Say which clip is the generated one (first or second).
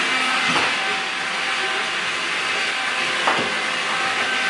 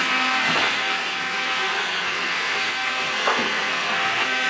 second